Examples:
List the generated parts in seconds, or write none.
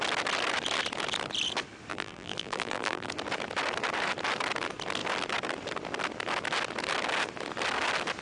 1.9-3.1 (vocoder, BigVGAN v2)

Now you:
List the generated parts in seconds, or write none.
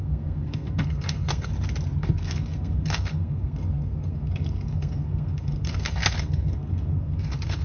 0.0-1.5 (codec, SNAC); 2.0-7.6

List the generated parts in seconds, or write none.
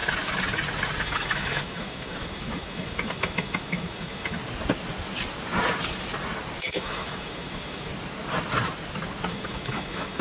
1.0-4.4 (autoencoder, DAC-VAE); 6.6-7.9; 9.3-10.2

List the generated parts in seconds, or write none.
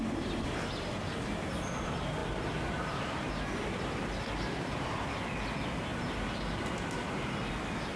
2.2-3.3 (vocoder, BigVGAN v2)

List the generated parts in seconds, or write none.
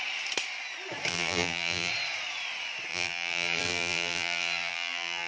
1.1-1.9 (vocoder, BigVGAN v2); 2.9-5.3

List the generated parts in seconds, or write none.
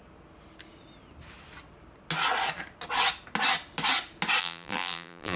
4.4-5.4 (vocoder, BigVGAN v2)